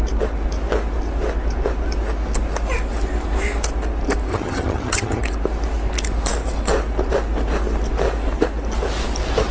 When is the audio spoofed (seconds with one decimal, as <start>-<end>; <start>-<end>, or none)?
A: 4.3-5.2

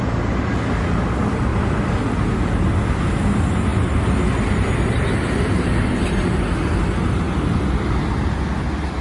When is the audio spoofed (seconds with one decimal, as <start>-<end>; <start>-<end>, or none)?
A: none

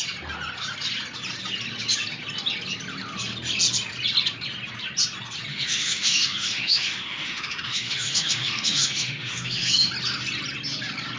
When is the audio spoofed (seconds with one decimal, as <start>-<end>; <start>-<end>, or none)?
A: 5.5-9.9

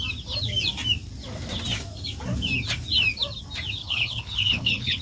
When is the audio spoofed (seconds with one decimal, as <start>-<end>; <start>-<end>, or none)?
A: 3.8-5.0